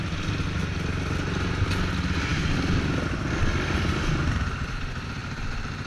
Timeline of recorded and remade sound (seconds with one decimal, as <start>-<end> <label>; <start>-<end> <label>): 0.0-2.3 recorded; 2.3-4.7 remade; 4.7-5.2 recorded; 5.2-5.9 remade